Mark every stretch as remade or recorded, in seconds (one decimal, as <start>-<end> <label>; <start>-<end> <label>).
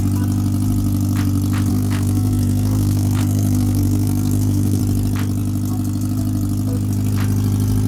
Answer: 0.0-1.7 recorded; 1.7-4.8 remade; 4.8-7.9 recorded